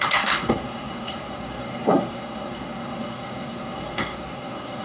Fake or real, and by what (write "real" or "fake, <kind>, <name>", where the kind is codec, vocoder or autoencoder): fake, codec, SNAC